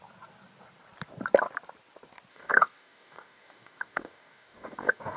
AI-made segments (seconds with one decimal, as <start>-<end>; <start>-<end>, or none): 2.3-5.2